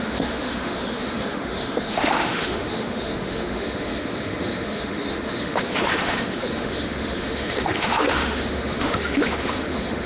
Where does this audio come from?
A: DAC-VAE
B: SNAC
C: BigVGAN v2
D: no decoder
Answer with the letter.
A